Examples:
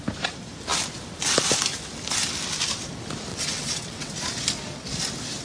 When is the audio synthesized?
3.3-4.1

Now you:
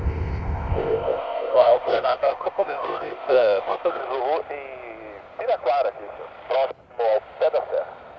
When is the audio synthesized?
0.0-4.0

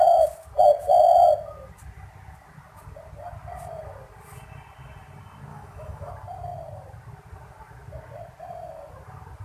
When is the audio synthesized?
5.5-6.1

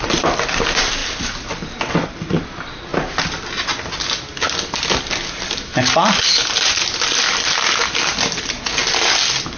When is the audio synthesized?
none

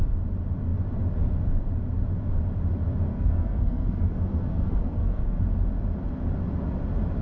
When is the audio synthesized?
3.1-5.4